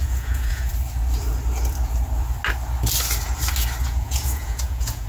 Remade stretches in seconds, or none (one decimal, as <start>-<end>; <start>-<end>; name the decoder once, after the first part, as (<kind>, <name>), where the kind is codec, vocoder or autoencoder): 0.0-0.7 (vocoder, Vocos); 3.8-5.1